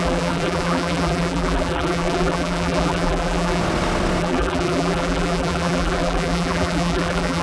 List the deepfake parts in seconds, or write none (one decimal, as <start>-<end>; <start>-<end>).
0.0-3.6; 4.2-7.4

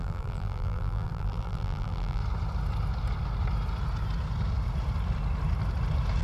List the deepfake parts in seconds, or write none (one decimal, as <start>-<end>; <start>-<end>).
0.0-2.2

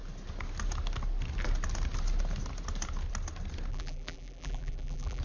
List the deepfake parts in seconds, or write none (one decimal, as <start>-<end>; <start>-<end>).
3.7-5.2

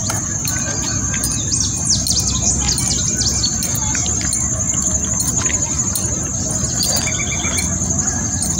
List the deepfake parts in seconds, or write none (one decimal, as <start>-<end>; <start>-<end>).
none

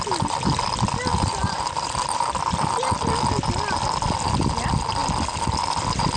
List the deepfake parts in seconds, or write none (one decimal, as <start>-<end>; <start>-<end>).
1.1-2.4

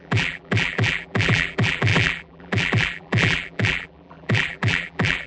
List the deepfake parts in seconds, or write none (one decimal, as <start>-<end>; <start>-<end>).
0.0-5.3